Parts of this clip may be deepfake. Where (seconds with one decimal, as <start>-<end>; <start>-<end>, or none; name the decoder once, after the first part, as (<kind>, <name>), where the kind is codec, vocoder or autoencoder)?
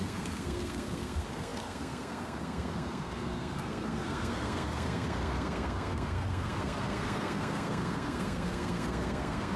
0.0-9.6 (codec, SNAC)